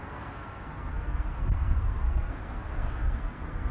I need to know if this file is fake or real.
fake